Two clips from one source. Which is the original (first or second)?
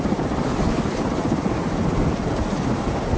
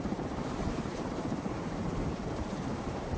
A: first